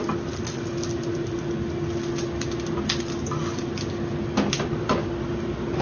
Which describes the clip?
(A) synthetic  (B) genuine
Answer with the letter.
B